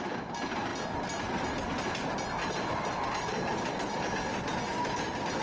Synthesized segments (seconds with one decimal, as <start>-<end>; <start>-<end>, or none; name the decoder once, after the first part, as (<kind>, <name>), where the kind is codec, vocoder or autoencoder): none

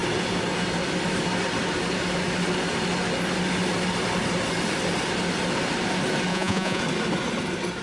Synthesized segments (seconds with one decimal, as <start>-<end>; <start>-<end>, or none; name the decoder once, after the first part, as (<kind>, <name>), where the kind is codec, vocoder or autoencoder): 6.3-6.8 (vocoder, Vocos)

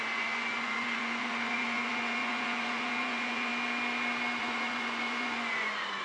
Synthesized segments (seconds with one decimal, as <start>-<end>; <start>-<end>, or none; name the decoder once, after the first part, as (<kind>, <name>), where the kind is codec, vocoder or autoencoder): 0.0-3.5 (vocoder, Vocos); 4.4-6.0

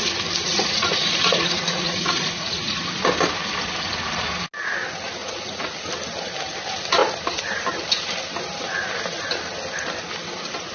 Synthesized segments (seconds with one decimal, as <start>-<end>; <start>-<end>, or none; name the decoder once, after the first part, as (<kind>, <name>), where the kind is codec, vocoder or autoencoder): 0.5-2.8 (vocoder, Vocos); 5.2-5.8